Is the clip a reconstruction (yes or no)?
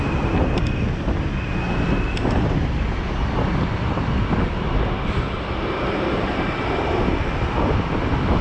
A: no